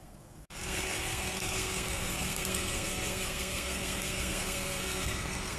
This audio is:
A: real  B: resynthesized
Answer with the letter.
B